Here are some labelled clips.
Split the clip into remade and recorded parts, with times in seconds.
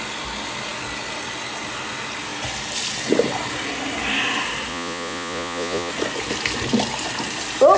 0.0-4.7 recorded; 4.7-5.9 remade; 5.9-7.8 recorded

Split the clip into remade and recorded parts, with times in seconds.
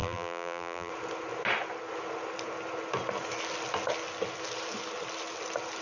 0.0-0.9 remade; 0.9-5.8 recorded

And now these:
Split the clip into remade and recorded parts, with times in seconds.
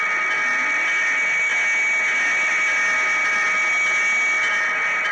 0.0-5.1 recorded